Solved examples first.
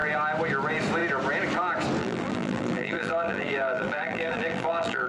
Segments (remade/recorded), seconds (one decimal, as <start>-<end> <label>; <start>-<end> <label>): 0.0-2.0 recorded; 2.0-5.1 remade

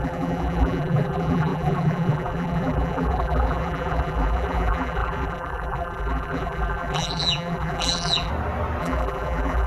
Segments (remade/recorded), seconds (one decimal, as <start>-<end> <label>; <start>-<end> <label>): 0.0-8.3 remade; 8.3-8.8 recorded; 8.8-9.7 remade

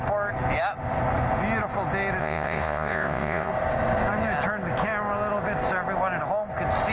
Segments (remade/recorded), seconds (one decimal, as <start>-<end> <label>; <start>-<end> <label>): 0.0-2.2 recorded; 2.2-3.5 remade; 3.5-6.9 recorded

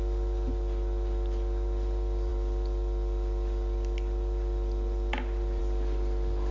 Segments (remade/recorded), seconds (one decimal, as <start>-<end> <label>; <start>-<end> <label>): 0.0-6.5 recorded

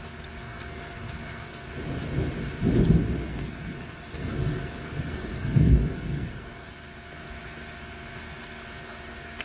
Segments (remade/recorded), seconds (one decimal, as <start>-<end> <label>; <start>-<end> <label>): 0.0-0.4 recorded; 0.4-1.7 remade; 1.7-3.3 recorded; 3.3-6.7 remade; 6.7-9.4 recorded

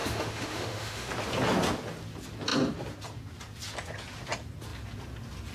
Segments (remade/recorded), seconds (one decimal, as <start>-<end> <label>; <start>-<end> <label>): 0.0-1.1 remade; 1.1-5.5 recorded

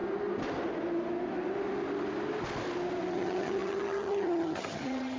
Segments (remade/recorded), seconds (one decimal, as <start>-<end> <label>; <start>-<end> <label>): 0.0-3.1 recorded; 3.1-5.2 remade